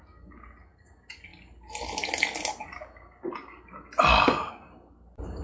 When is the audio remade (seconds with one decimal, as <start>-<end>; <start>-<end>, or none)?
none

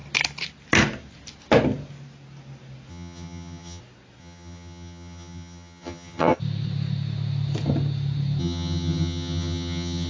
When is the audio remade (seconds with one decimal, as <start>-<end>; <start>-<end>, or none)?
2.9-3.8; 4.2-6.4; 8.4-10.1

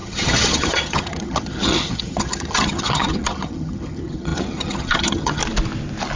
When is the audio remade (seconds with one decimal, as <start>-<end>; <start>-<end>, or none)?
0.0-5.4

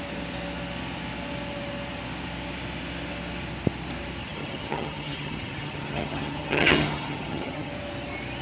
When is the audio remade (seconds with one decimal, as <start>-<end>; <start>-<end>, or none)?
4.2-7.7

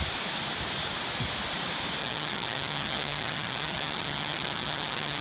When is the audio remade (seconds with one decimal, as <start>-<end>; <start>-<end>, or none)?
2.0-5.2